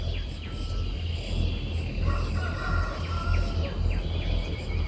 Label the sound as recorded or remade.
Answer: recorded